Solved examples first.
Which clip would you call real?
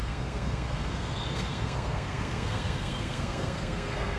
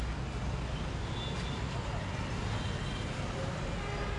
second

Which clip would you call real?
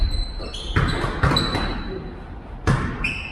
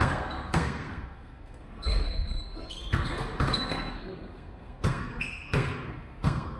first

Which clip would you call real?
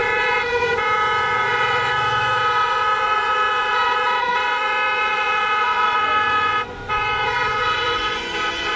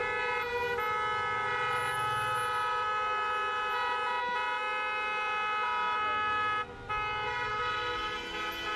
second